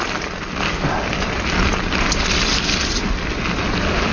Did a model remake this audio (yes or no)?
no